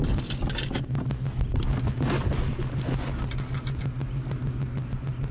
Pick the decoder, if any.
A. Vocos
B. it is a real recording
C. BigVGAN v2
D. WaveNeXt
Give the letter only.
B